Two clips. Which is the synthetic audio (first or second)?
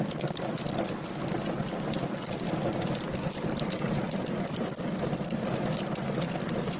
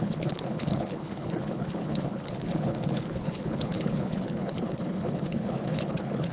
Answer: second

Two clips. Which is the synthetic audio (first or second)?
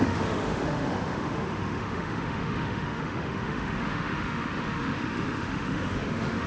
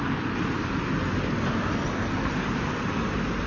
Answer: first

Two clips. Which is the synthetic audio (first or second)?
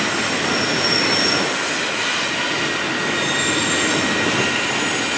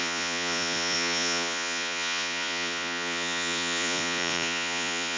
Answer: second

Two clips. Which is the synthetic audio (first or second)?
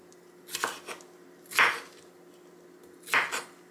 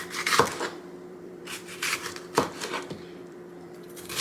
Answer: second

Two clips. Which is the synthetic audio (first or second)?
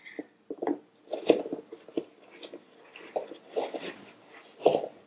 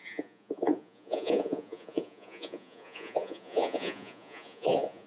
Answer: second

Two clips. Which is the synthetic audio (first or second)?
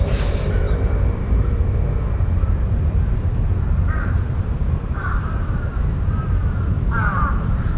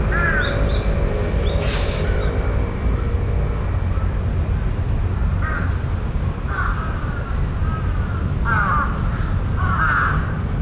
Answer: first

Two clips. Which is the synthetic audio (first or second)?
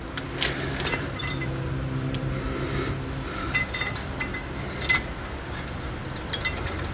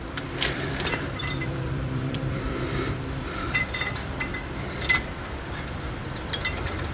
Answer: second